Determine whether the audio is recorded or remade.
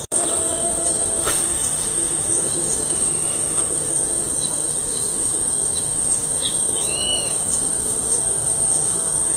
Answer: remade